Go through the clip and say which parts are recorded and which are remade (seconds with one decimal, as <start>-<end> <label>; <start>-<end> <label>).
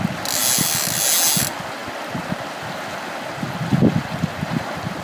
0.0-5.0 recorded